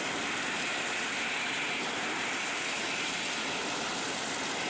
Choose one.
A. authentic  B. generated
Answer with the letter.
A